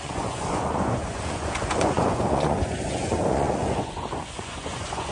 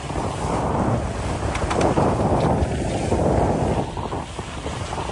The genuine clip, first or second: second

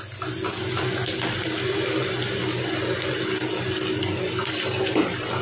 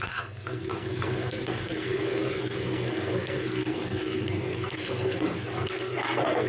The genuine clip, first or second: first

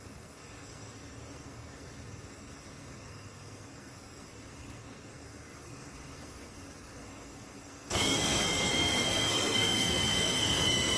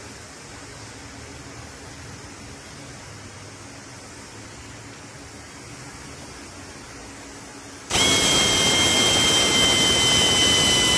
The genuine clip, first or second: second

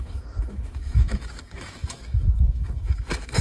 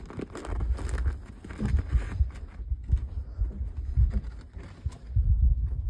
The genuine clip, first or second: second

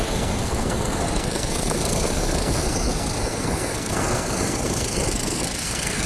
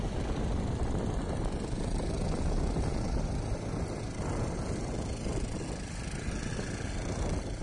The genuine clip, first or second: second